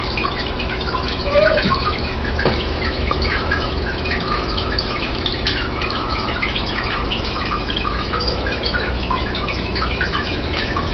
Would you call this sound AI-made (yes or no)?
yes